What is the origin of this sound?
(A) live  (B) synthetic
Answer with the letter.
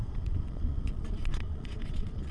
B